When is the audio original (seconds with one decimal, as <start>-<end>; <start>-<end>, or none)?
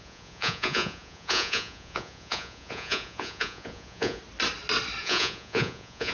4.2-5.0